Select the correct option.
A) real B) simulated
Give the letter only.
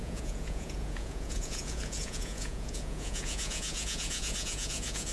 B